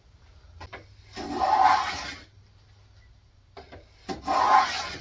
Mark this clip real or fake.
real